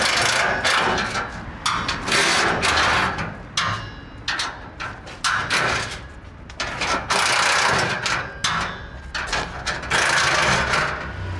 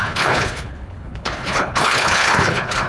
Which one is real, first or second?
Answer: first